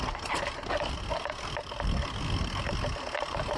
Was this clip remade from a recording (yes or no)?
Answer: no